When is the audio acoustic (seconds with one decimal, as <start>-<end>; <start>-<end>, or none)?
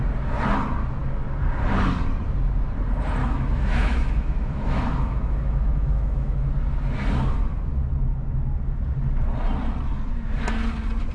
0.0-3.2; 6.5-11.1